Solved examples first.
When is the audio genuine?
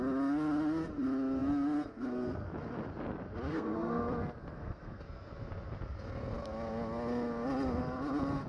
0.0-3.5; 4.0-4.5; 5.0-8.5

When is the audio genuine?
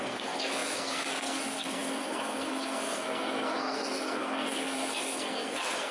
none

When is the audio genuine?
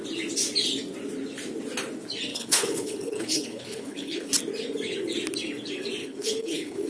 0.0-2.3; 4.3-6.0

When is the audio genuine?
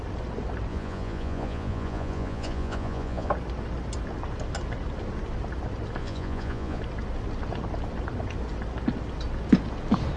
0.0-0.7; 3.3-6.0; 6.8-10.2